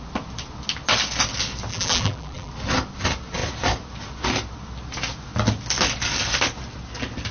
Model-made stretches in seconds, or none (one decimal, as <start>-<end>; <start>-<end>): 1.7-2.5